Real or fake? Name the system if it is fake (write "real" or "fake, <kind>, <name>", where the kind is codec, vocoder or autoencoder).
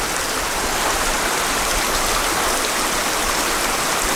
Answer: real